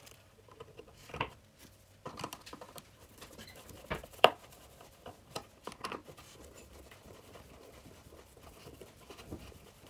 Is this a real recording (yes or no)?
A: no